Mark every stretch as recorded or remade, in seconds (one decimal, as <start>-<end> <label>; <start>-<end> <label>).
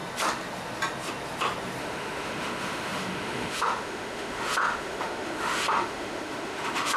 0.0-1.8 recorded; 1.8-7.0 remade